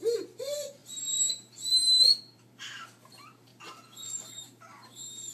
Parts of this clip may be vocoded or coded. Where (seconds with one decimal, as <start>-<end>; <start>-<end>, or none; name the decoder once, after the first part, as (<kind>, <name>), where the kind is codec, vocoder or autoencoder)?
0.0-0.8 (vocoder, BigVGAN v2); 2.2-3.5; 4.4-5.3